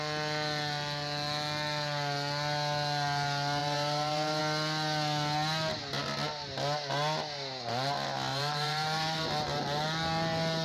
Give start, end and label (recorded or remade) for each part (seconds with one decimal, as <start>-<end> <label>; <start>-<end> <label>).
0.0-3.6 recorded; 3.6-4.4 remade; 4.4-8.3 recorded; 8.3-9.3 remade; 9.3-10.6 recorded